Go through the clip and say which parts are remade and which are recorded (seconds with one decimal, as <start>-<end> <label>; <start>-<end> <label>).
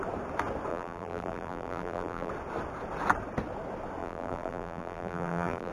0.0-0.7 recorded; 0.7-2.3 remade; 2.3-4.0 recorded; 4.0-5.7 remade